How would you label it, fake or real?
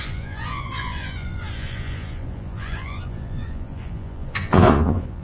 fake